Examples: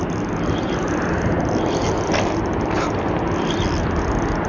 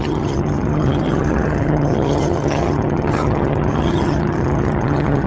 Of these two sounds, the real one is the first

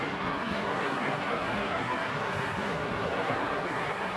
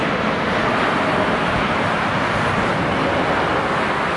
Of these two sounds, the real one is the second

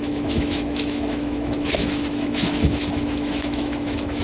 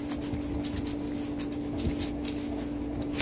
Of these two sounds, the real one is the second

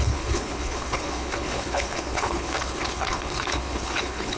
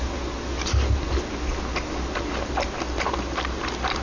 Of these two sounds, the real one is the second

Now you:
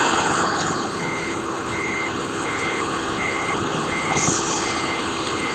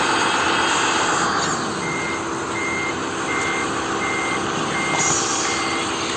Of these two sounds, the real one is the second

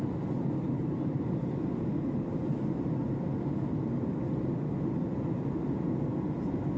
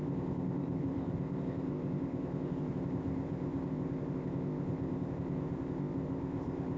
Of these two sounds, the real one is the first